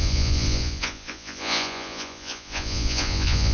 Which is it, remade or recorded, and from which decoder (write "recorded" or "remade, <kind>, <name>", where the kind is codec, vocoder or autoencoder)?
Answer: remade, vocoder, Vocos